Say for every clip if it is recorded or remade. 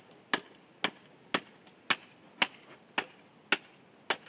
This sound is recorded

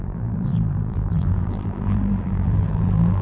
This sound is remade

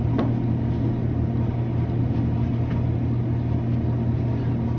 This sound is recorded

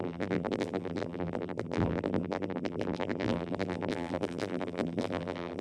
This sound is remade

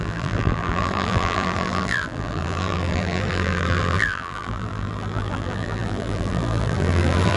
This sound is remade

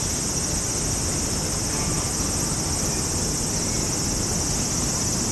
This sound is recorded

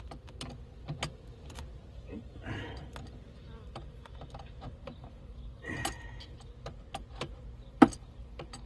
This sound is recorded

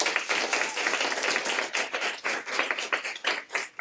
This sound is recorded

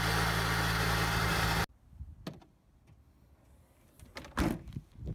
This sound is recorded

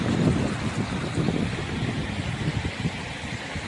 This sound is recorded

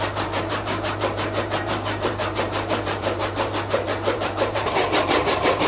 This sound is remade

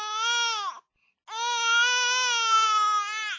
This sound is recorded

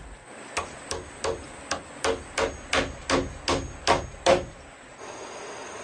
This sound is recorded